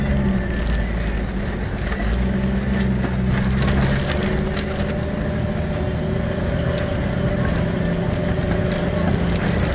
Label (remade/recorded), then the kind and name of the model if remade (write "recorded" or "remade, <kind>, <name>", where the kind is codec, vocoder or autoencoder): recorded